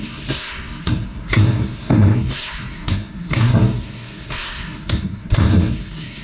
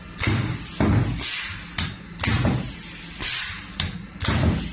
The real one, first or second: second